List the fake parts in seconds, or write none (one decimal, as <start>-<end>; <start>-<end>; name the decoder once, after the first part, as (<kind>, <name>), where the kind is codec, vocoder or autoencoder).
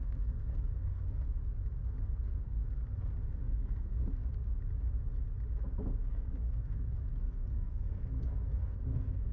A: 0.0-1.4 (codec, SNAC); 2.0-2.6; 3.3-4.2; 6.1-9.3